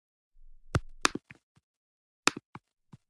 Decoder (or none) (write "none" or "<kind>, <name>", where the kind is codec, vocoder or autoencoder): none